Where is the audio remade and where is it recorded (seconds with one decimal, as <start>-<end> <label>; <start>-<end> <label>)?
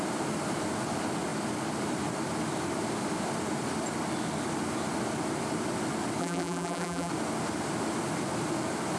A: 0.0-6.2 recorded; 6.2-7.1 remade; 7.1-9.0 recorded